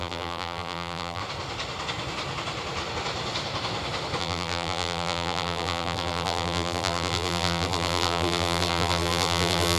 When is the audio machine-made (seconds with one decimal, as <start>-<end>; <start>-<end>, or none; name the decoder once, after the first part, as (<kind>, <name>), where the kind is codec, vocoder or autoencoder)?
0.0-1.2 (vocoder, BigVGAN v2); 4.2-9.8